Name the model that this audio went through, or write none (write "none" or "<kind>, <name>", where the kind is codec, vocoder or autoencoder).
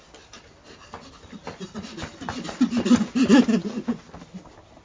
none